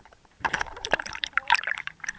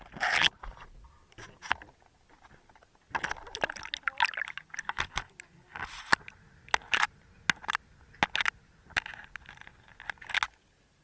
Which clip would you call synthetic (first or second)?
first